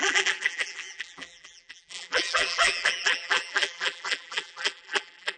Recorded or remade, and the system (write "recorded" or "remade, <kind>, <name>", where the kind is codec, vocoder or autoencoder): remade, vocoder, BigVGAN v2